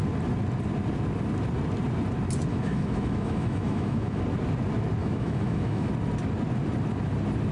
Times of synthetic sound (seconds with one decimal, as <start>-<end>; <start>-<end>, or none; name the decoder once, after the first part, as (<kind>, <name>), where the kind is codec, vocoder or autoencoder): 2.5-4.2 (autoencoder, DAC-VAE); 5.0-5.9